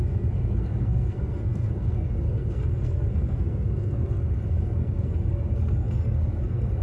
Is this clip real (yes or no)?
no